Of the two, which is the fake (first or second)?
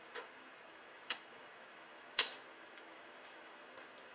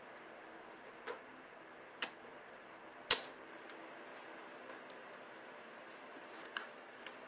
first